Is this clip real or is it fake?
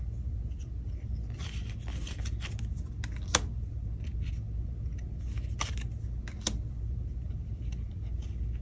real